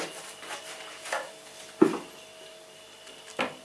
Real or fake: real